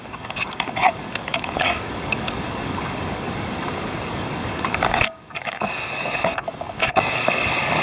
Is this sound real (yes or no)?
no